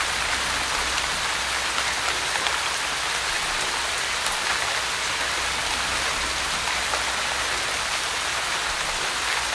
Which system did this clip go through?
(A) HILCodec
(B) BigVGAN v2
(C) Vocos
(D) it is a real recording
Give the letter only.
D